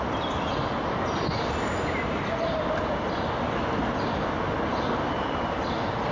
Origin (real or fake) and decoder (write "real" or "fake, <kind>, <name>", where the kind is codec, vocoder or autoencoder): real